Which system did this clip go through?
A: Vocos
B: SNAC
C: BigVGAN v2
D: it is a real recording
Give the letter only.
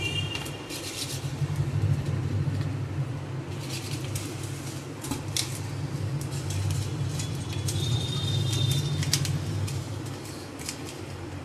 D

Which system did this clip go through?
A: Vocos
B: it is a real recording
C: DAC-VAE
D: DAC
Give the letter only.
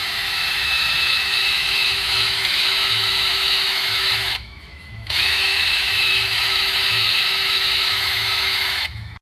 C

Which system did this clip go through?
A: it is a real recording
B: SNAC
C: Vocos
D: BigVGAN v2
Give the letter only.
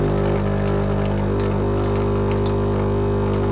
A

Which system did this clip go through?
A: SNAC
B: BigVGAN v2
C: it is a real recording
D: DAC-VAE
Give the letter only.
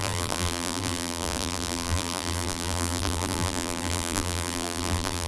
B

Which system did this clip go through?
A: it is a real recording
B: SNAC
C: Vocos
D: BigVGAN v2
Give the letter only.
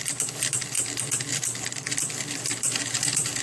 D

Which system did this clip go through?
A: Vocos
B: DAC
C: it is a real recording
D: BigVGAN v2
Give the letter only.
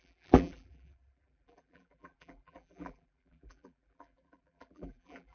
D